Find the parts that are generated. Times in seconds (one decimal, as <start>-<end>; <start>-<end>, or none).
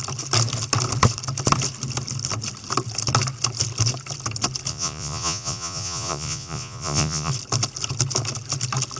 4.7-7.3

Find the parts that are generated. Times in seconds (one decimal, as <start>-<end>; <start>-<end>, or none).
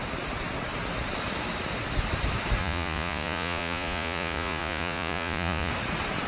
2.6-5.7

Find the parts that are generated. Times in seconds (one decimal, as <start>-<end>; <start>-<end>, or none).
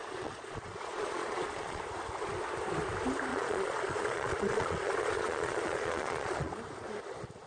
0.0-1.8; 3.3-6.5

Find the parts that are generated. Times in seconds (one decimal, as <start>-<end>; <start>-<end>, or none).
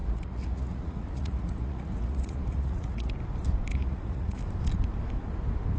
0.0-3.1; 3.7-4.4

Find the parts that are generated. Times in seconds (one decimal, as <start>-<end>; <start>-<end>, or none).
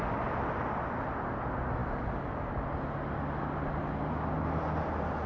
none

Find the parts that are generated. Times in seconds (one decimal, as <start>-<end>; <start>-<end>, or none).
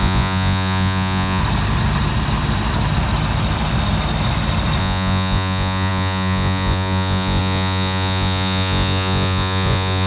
0.0-1.4; 4.8-10.1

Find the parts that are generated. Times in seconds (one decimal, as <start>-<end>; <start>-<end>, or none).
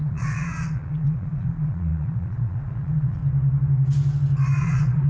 0.0-3.2; 4.6-5.1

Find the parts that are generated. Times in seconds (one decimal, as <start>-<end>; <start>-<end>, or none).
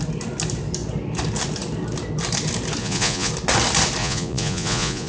2.8-3.3; 4.0-5.1